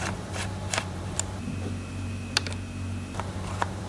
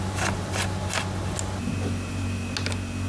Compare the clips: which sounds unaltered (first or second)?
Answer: second